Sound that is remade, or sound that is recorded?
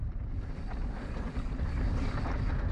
recorded